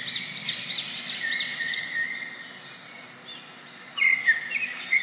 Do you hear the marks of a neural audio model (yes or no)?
no